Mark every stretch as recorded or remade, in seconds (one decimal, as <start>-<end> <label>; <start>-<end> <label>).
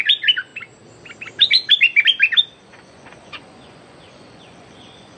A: 0.0-0.5 remade; 0.5-2.6 recorded; 2.6-5.2 remade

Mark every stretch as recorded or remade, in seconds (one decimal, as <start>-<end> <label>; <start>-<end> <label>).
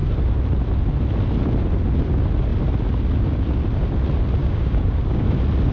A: 0.0-4.4 recorded; 4.4-5.3 remade; 5.3-5.7 recorded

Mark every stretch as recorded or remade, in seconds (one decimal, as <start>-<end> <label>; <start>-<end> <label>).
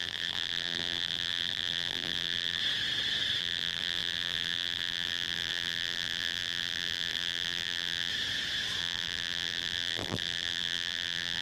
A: 0.0-2.6 remade; 2.6-3.4 recorded; 3.4-8.1 remade; 8.1-8.8 recorded; 8.8-11.4 remade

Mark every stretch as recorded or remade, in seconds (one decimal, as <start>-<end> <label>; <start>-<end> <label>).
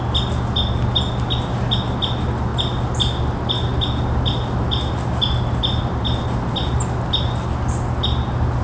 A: 0.0-8.6 recorded